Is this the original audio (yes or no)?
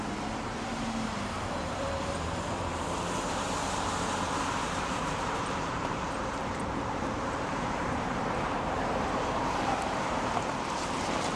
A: no